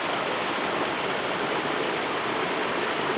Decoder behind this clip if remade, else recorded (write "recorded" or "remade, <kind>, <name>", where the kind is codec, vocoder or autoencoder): recorded